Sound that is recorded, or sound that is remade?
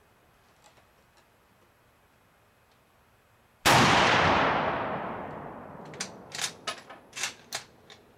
recorded